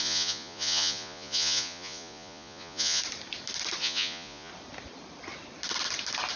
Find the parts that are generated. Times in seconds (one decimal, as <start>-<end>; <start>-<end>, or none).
0.0-3.0; 3.8-4.5